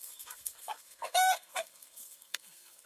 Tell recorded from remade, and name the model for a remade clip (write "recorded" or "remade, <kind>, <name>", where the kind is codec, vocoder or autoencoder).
remade, codec, SNAC